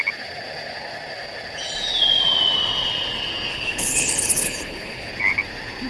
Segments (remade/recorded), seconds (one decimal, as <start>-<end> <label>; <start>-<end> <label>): 0.0-3.5 recorded; 3.5-5.1 remade; 5.1-5.9 recorded